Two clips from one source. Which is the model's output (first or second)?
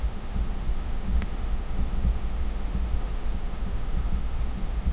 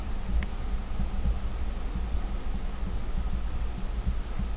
first